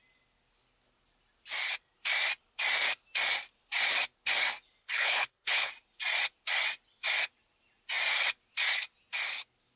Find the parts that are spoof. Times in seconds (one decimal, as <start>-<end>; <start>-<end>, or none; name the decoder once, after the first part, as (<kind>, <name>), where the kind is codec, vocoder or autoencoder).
4.8-5.7 (codec, HILCodec)